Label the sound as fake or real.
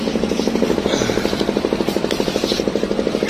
real